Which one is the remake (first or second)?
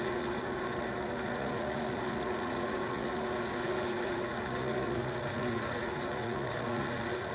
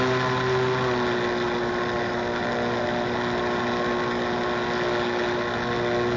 first